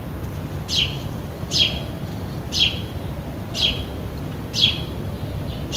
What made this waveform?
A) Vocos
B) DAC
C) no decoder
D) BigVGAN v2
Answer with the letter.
C